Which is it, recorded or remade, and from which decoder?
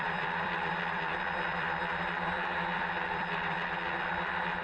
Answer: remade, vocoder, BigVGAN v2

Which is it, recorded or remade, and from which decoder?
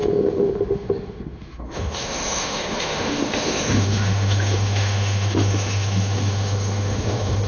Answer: remade, autoencoder, DAC-VAE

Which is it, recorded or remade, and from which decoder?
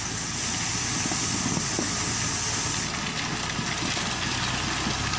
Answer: recorded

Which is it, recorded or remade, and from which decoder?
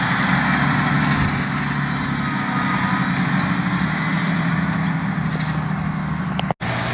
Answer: recorded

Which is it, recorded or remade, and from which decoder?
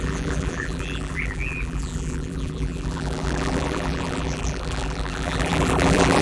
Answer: remade, vocoder, BigVGAN v2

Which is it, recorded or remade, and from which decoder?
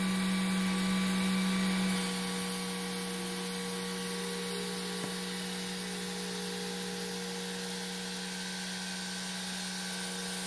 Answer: recorded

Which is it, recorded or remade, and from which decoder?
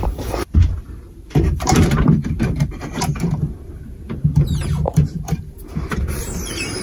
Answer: remade, vocoder, BigVGAN v2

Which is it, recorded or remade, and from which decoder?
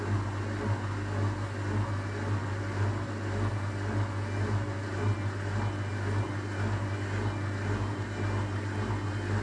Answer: recorded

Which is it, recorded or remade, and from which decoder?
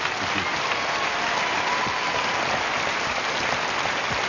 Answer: recorded